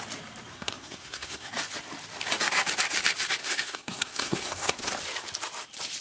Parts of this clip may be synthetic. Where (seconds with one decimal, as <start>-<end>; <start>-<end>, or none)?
0.5-1.5; 3.4-4.9